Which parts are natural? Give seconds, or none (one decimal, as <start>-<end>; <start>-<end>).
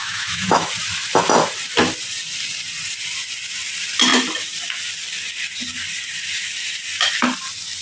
0.7-7.8